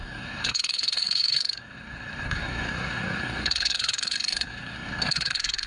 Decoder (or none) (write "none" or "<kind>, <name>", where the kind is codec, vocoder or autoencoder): codec, SNAC